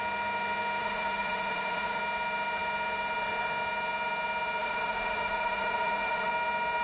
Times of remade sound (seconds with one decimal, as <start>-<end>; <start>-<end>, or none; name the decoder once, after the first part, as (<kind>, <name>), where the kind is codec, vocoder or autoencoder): 0.8-2.0 (vocoder, Vocos); 4.6-6.3